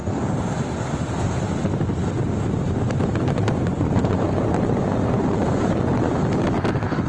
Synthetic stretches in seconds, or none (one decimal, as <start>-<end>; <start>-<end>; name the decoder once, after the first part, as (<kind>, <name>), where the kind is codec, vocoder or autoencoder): 3.2-6.1 (vocoder, Vocos)